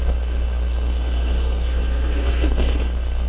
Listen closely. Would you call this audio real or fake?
fake